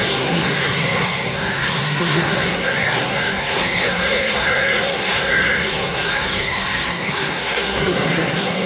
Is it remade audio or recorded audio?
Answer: remade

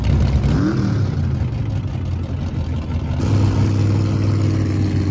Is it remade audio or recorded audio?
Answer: recorded